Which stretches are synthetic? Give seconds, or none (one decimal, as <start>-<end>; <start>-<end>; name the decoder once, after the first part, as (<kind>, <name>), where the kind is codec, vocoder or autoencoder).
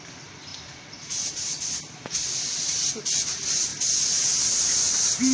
none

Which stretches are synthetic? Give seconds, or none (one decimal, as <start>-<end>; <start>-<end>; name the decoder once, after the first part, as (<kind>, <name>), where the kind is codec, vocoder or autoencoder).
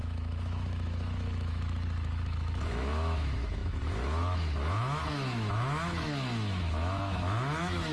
0.0-7.9 (autoencoder, DAC-VAE)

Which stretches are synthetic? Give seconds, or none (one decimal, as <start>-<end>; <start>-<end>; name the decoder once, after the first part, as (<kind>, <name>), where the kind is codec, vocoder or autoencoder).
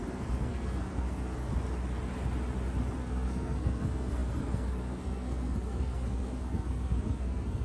0.0-1.5 (codec, SNAC); 3.0-7.6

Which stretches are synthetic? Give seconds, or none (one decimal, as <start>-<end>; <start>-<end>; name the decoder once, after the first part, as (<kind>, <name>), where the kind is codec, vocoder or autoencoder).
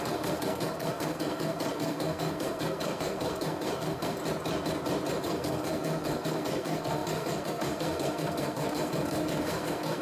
0.0-4.2 (codec, SNAC); 5.2-10.0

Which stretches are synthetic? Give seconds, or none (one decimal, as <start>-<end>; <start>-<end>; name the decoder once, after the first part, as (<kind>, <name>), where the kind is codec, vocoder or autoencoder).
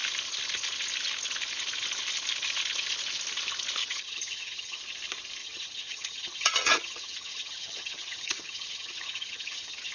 3.8-4.8 (vocoder, HiFi-GAN); 5.4-9.9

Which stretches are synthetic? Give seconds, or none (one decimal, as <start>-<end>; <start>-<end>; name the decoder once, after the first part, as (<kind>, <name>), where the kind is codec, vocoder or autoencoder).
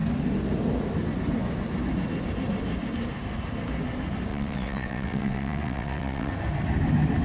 4.3-6.3 (vocoder, WaveNeXt)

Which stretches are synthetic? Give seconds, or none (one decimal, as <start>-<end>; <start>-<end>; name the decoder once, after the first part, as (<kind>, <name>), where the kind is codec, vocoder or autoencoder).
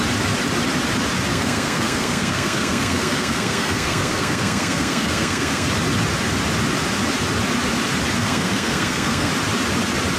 1.3-5.7 (codec, SNAC); 8.2-9.3